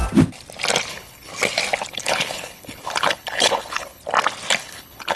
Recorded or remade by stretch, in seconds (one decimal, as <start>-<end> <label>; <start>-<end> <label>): 0.0-0.9 recorded; 0.9-1.3 remade; 1.3-1.9 recorded; 1.9-4.0 remade; 4.0-4.6 recorded; 4.6-5.2 remade